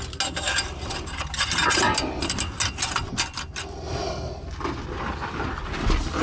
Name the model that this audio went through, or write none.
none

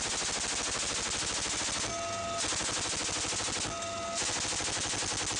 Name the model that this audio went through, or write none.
none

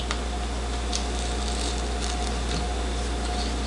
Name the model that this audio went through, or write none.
none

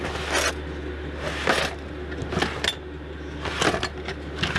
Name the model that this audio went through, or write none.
none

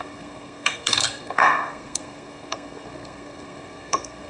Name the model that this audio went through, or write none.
codec, SNAC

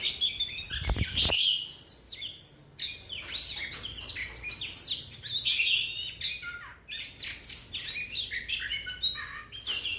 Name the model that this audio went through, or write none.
none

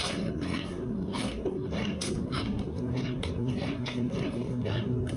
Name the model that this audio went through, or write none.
codec, SNAC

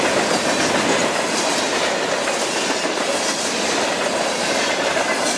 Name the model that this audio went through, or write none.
none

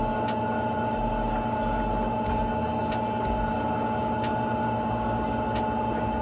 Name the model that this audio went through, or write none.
none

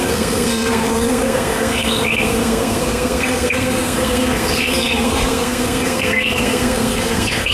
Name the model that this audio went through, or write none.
codec, SNAC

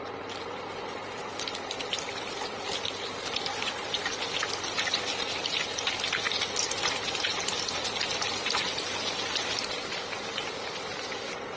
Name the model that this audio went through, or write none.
none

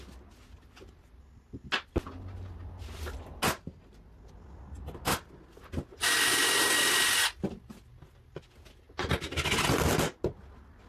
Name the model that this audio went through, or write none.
none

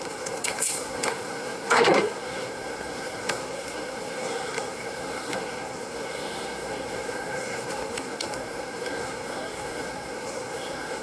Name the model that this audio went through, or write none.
codec, SNAC